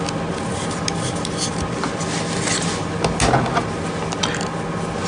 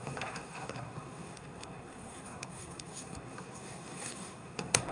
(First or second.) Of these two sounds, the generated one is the second